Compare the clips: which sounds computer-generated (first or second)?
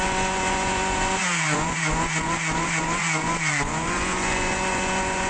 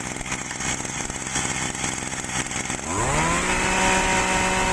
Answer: first